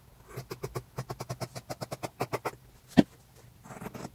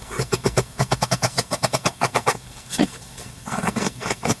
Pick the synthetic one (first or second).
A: second